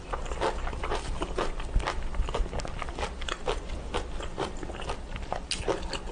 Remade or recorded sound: recorded